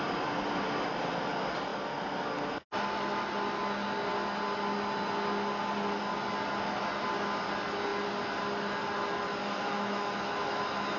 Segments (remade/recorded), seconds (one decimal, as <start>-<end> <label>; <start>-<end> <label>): 0.0-9.4 recorded; 9.4-10.6 remade; 10.6-11.0 recorded